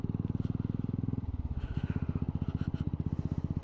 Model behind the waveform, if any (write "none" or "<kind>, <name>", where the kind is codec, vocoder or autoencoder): none